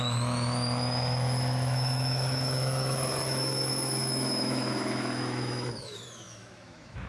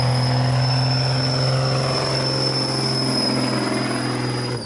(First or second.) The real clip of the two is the second